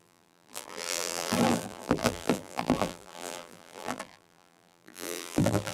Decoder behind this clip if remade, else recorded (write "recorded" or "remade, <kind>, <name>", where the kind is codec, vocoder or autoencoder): remade, vocoder, BigVGAN v2